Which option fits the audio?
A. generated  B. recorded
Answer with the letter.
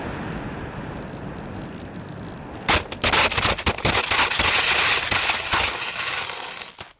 B